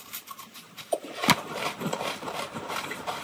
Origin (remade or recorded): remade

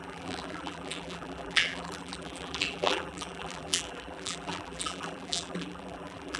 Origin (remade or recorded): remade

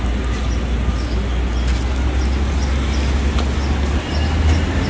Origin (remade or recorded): recorded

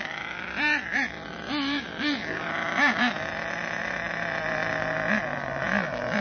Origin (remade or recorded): remade